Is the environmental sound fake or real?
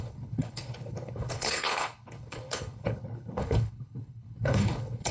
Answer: fake